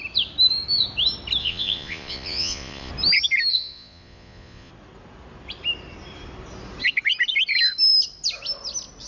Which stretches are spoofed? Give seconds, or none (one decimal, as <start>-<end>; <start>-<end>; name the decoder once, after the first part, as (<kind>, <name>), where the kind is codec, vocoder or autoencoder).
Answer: 1.4-2.9 (vocoder, Vocos); 3.5-4.7